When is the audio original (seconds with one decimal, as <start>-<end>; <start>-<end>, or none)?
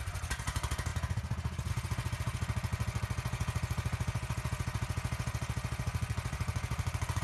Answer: none